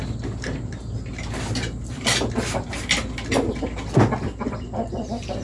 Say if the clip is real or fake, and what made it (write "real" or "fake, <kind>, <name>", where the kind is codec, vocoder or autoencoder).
real